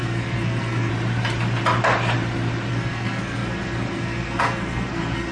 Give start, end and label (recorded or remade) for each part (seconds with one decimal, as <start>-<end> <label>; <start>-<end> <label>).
0.0-0.9 remade; 0.9-2.7 recorded; 2.7-5.3 remade

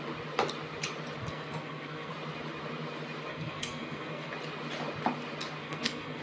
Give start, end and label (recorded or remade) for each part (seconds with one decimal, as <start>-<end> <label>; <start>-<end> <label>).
0.0-1.2 recorded; 1.2-2.1 remade; 2.1-3.3 recorded; 3.3-4.3 remade; 4.3-5.6 recorded; 5.6-6.2 remade

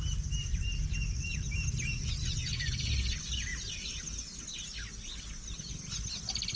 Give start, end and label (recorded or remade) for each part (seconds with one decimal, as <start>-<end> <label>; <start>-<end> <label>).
0.0-6.6 recorded

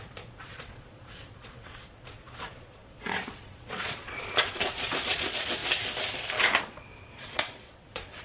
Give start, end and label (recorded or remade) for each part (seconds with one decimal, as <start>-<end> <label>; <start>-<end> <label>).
0.0-5.6 remade; 5.6-6.6 recorded; 6.6-8.2 remade

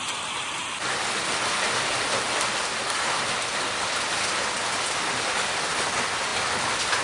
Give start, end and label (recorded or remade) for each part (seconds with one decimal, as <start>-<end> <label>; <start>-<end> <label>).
0.0-7.0 recorded